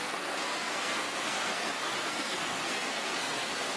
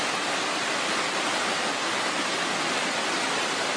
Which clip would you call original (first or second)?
second